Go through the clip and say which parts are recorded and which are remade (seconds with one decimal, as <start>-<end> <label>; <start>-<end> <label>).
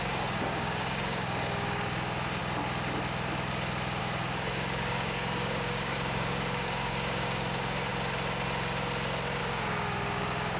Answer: 0.0-2.4 remade; 2.4-4.0 recorded; 4.0-7.9 remade; 7.9-9.4 recorded; 9.4-10.6 remade